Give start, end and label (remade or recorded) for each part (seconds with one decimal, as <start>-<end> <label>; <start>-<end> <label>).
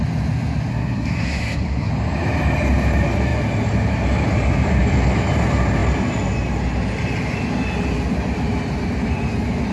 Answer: 0.0-0.7 recorded; 0.7-1.9 remade; 1.9-9.7 recorded